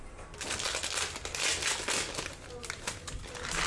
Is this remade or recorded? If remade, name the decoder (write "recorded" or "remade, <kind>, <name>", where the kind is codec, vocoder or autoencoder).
recorded